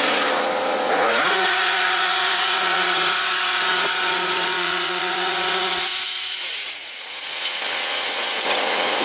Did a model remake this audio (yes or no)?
yes